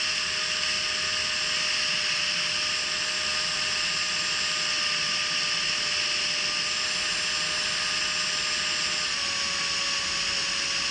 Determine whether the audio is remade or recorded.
recorded